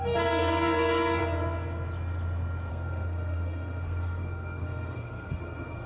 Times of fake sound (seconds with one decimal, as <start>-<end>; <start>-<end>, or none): 0.0-1.2; 2.7-5.9